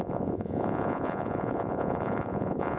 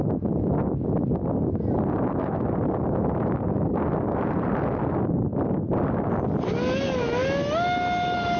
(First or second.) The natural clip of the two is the second